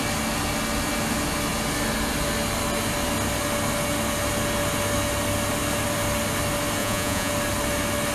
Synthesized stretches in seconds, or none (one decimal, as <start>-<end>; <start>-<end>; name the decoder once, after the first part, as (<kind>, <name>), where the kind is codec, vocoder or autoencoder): 6.8-7.3 (vocoder, Vocos)